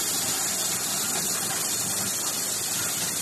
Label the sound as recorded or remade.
recorded